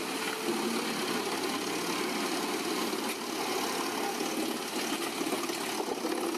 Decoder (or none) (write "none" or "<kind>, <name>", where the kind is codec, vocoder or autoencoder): none